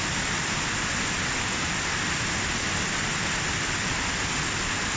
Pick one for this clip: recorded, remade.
recorded